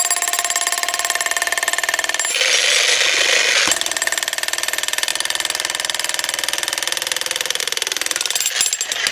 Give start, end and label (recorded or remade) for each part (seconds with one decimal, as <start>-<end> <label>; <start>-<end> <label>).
0.0-9.1 recorded